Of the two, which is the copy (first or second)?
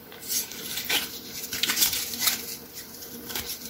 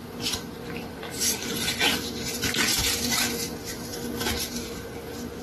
first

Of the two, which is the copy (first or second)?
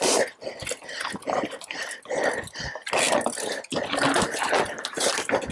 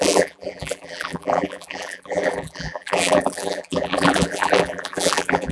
second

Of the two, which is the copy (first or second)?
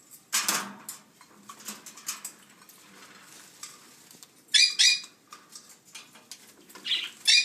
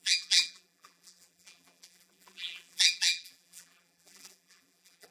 second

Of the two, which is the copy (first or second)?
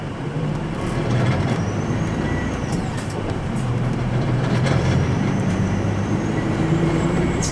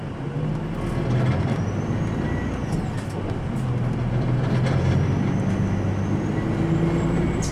first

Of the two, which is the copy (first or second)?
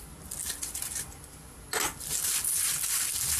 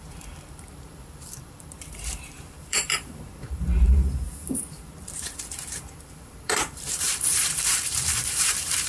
second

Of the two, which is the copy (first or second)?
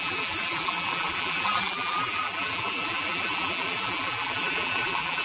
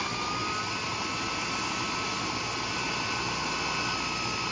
first